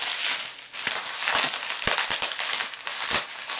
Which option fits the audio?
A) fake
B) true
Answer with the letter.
B